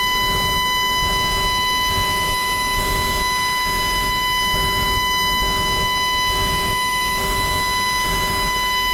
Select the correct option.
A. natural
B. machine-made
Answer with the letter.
B